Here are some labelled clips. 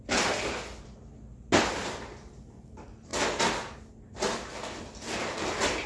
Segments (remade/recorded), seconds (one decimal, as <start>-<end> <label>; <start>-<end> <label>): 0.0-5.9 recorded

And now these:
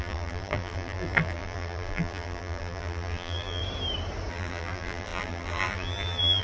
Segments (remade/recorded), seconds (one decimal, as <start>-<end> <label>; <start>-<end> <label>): 0.0-3.6 remade; 3.6-4.3 recorded; 4.3-6.4 remade

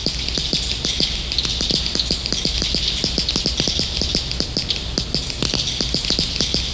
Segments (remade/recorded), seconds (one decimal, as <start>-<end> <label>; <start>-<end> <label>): 0.0-6.7 recorded

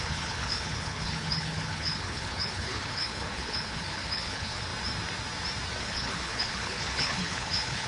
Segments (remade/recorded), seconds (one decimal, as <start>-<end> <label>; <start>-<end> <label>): 0.0-4.7 remade; 4.7-5.8 recorded; 5.8-7.9 remade

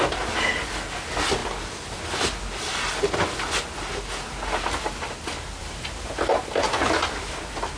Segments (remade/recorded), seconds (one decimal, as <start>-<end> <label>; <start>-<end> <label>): 0.0-7.8 recorded